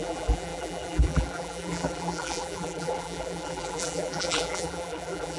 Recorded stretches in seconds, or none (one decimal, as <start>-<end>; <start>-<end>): none

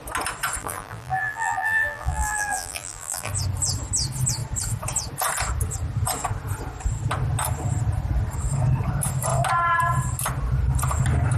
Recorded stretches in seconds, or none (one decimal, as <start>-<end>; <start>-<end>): 0.0-0.6; 3.3-11.4

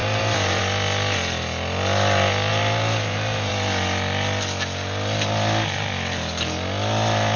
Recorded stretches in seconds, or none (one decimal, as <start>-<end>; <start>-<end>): 0.6-2.5; 3.5-7.4

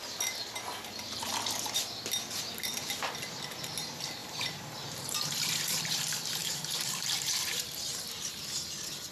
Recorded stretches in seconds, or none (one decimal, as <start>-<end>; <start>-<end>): 0.0-4.2; 6.0-6.4; 7.8-9.1

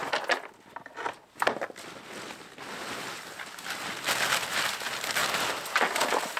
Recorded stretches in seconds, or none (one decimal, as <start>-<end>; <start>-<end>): 0.0-5.2

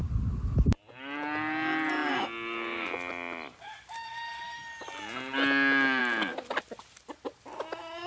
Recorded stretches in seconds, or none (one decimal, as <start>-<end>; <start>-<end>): 0.9-8.1

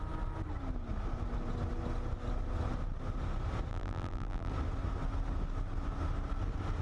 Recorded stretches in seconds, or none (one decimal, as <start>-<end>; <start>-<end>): 0.0-3.7; 4.5-6.8